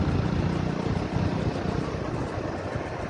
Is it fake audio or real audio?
real